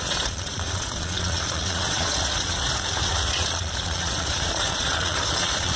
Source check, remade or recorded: remade